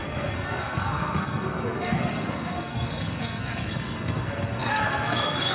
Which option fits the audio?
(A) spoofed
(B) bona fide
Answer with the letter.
A